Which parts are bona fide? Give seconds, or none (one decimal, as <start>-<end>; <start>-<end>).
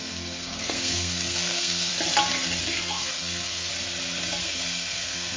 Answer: 1.9-2.6; 3.7-4.4